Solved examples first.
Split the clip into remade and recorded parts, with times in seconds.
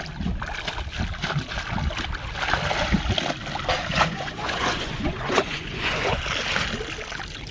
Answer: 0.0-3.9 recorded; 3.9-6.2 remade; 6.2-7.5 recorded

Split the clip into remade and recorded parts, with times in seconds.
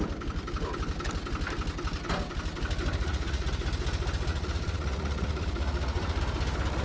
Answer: 0.0-3.0 recorded; 3.0-3.5 remade; 3.5-4.3 recorded; 4.3-6.2 remade; 6.2-6.8 recorded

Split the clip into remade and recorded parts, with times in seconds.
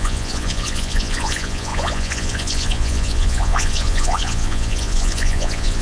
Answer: 0.0-5.8 remade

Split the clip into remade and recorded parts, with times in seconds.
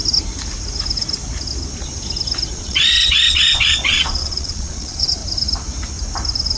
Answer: 0.0-2.5 recorded; 2.5-5.2 remade; 5.2-6.6 recorded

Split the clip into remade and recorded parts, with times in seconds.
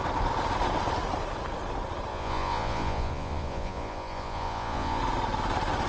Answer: 0.0-2.1 recorded; 2.1-5.0 remade; 5.0-5.9 recorded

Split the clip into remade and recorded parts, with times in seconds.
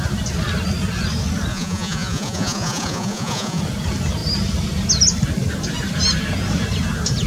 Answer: 0.0-1.5 recorded; 1.5-3.6 remade; 3.6-7.3 recorded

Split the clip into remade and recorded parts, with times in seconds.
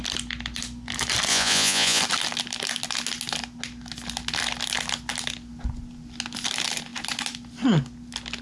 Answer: 0.0-1.3 recorded; 1.3-2.0 remade; 2.0-8.4 recorded